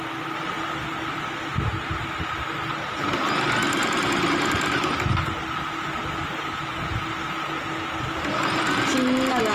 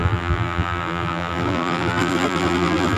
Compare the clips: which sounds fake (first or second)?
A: second